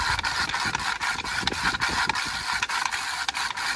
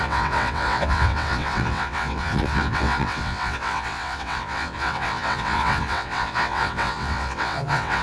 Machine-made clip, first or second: second